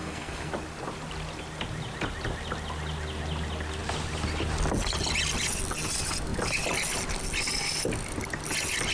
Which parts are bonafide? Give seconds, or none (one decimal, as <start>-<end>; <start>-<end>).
0.5-8.9